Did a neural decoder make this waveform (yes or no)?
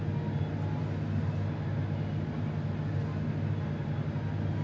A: no